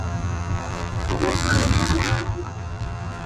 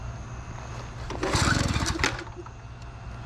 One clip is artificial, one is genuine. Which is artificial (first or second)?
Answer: first